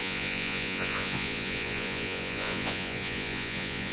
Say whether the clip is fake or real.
fake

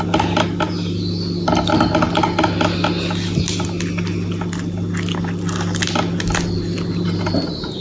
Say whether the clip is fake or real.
real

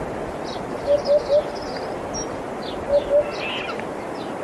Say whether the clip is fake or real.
real